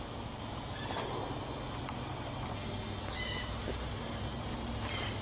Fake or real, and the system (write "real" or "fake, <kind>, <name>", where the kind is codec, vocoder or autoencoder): real